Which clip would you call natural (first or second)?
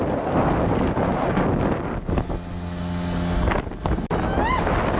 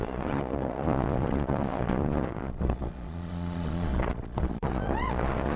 first